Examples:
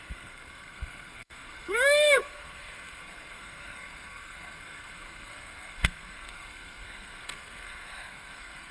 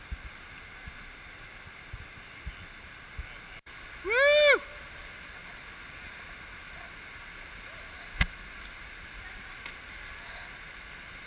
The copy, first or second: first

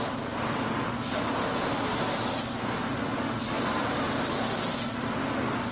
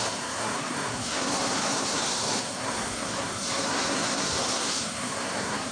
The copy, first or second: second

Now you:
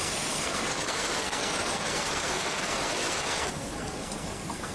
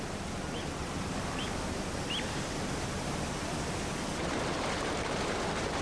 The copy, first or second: first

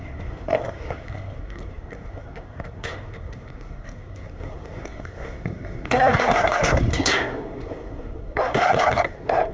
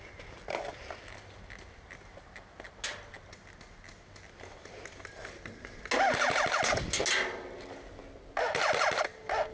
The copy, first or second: first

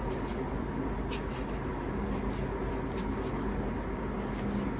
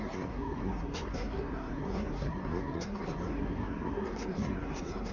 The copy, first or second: second